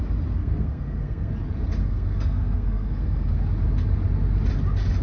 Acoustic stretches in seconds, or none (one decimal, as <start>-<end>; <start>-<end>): 0.0-0.4; 1.3-1.8; 3.4-5.0